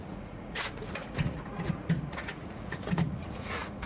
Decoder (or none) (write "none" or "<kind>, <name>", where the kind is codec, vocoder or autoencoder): vocoder, Vocos